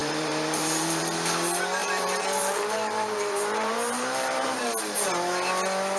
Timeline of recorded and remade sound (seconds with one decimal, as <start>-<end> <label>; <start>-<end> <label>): 0.0-1.0 remade; 1.0-1.8 recorded; 1.8-4.6 remade; 4.6-6.0 recorded